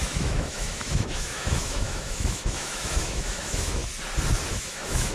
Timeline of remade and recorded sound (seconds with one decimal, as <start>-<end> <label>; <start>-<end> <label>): 0.0-3.8 remade; 3.8-4.5 recorded; 4.5-5.1 remade